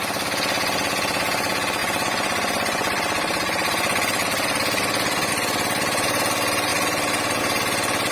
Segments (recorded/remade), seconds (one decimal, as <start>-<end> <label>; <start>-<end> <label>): 0.0-1.8 recorded; 1.8-5.3 remade; 5.3-6.7 recorded; 6.7-7.4 remade; 7.4-8.1 recorded